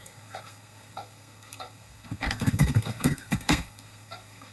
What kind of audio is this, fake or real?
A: fake